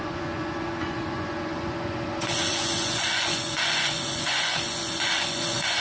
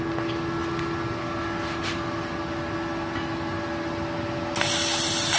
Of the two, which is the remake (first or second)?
first